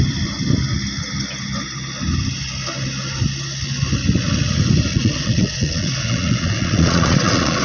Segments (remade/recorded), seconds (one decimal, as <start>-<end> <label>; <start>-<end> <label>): 0.0-4.9 recorded; 4.9-7.6 remade